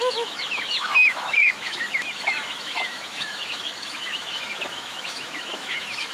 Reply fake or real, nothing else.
fake